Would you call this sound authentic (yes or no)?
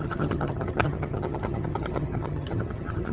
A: no